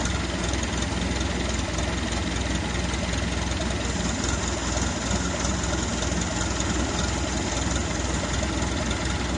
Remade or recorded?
recorded